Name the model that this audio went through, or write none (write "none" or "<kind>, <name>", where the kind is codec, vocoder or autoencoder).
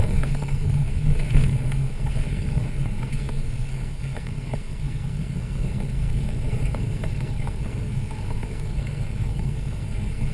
codec, SNAC